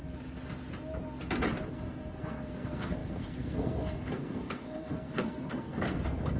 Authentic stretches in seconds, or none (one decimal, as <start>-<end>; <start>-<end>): 0.0-1.7